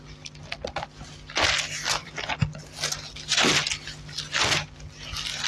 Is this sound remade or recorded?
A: recorded